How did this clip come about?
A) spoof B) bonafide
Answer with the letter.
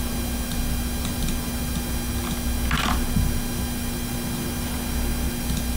B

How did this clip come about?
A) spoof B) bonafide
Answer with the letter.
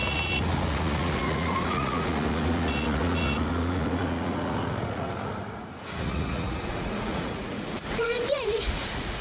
A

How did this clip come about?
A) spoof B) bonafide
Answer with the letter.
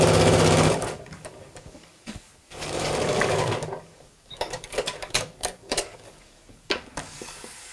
A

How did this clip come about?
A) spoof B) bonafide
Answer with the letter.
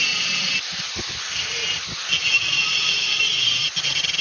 B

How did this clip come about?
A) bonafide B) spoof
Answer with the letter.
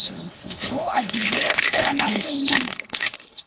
B